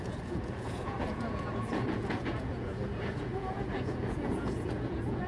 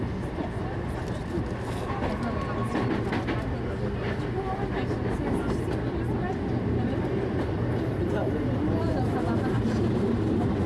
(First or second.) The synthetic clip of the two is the first